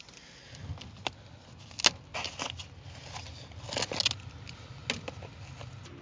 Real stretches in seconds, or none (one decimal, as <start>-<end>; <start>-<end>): 0.0-6.0